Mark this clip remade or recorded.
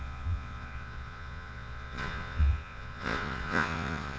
remade